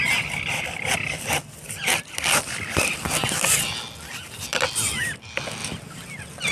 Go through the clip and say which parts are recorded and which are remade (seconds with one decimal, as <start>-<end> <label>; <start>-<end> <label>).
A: 0.0-6.5 recorded